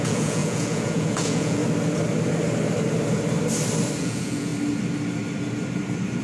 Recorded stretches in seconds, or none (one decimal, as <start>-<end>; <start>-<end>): 1.6-4.0; 4.5-6.2